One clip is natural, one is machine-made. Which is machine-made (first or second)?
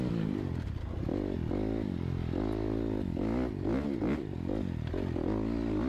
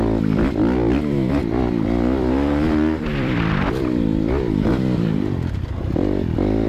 second